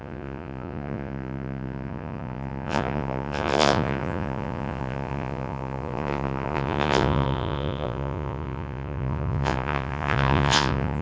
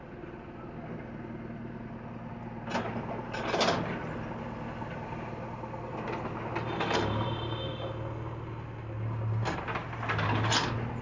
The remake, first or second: first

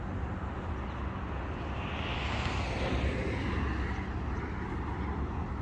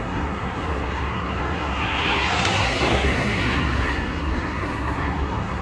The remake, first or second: second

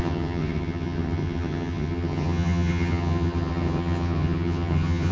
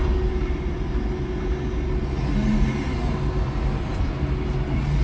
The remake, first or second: first